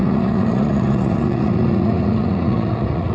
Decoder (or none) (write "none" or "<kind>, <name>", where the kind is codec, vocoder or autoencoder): vocoder, Vocos